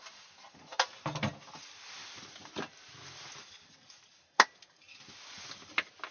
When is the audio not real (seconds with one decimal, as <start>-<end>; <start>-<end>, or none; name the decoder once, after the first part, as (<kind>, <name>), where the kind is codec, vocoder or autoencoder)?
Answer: none